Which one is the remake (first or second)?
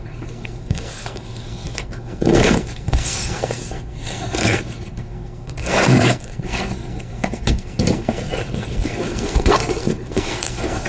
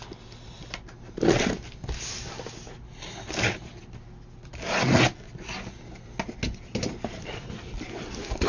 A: first